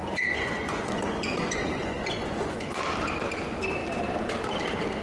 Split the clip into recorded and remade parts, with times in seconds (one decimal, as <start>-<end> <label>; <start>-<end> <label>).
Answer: 0.0-2.8 remade; 2.8-5.0 recorded